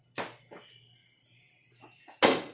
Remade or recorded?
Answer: recorded